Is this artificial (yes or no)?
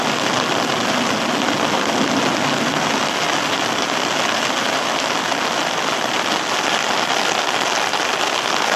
no